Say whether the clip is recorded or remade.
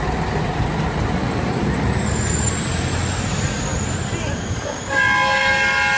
recorded